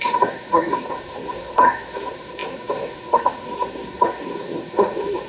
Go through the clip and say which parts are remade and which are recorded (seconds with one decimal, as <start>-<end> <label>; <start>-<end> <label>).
0.0-5.3 remade